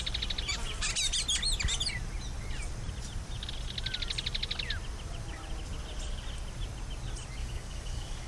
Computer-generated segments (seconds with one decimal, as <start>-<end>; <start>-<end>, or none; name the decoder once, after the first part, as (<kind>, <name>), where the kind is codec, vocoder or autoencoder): 7.4-8.3 (codec, DAC)